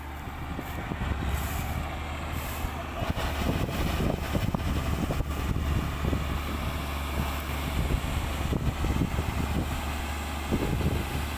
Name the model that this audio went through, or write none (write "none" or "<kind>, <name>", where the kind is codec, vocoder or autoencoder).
none